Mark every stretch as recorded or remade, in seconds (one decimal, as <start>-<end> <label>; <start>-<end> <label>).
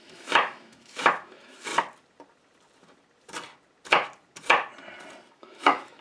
0.0-1.7 remade; 1.7-5.3 recorded; 5.3-6.0 remade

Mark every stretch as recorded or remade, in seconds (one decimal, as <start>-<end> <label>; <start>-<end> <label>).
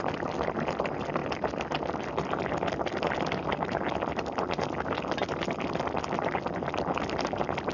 0.0-7.7 recorded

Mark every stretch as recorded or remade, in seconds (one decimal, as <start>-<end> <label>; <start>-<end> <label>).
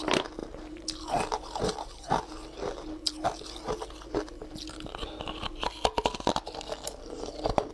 0.0-7.7 recorded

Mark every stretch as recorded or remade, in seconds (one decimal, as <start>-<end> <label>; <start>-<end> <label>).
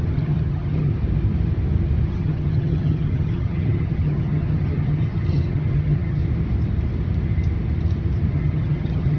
0.0-0.9 remade; 0.9-2.1 recorded; 2.1-6.2 remade; 6.2-8.3 recorded; 8.3-9.2 remade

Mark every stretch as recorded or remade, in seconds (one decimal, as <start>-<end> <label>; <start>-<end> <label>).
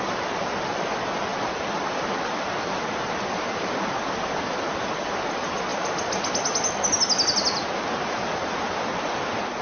0.0-1.3 recorded; 1.3-2.0 remade; 2.0-9.6 recorded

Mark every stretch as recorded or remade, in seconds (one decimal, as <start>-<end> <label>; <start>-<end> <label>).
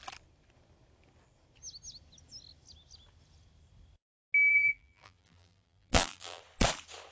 0.0-4.5 recorded; 4.5-6.4 remade; 6.4-7.1 recorded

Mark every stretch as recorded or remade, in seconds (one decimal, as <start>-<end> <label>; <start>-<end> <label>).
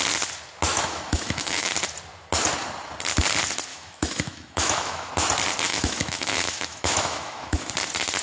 0.0-0.7 recorded; 0.7-1.7 remade; 1.7-3.7 recorded; 3.7-5.1 remade; 5.1-5.7 recorded; 5.7-7.7 remade; 7.7-8.2 recorded